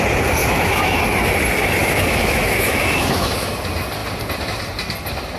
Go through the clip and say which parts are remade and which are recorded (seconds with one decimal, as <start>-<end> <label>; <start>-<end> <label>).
0.0-0.4 recorded; 0.4-1.0 remade; 1.0-1.8 recorded; 1.8-3.5 remade; 3.5-5.4 recorded